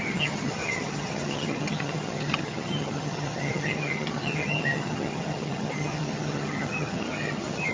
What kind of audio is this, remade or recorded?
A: remade